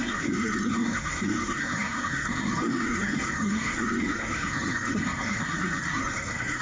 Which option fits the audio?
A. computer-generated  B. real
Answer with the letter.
A